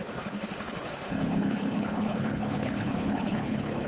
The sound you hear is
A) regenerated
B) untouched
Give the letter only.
A